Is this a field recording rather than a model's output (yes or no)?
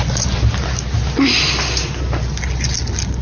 yes